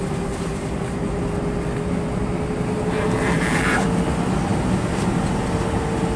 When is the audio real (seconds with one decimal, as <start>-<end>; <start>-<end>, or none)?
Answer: 0.0-6.2